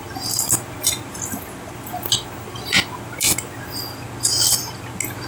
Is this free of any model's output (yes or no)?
yes